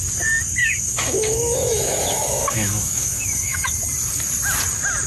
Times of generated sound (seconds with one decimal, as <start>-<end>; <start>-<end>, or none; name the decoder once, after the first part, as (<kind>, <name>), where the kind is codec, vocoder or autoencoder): 0.6-3.7 (autoencoder, DAC-VAE)